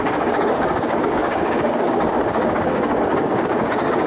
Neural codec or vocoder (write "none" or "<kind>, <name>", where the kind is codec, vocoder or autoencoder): codec, DAC